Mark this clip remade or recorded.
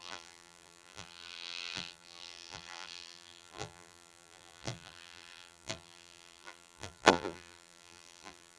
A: remade